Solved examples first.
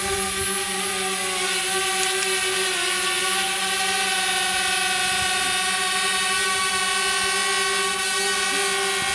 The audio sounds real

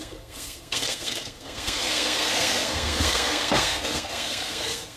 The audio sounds fake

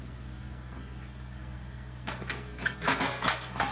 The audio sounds fake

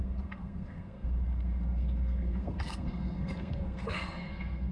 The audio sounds fake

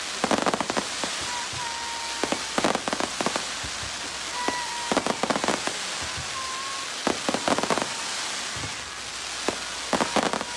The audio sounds real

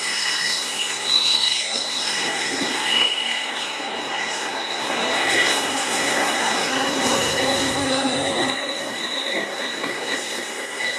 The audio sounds fake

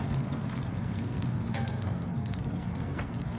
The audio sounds fake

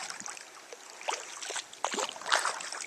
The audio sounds real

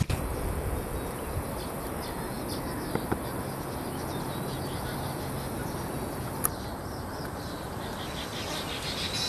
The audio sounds real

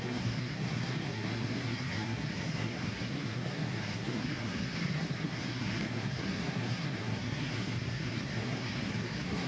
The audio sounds fake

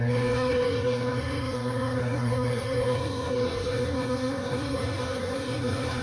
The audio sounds fake